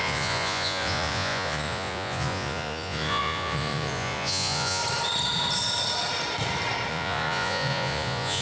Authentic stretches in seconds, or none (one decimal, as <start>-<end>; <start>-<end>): 4.8-6.9